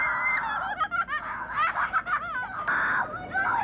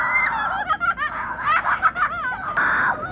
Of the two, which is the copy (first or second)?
second